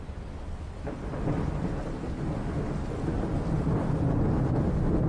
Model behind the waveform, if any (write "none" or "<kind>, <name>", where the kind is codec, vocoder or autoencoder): none